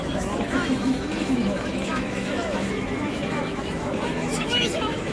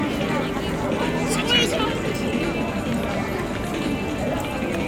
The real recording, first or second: second